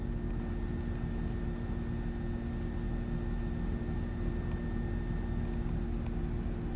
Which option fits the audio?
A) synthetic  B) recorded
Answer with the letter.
B